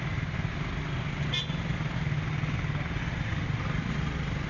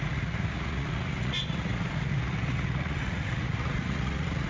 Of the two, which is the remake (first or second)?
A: second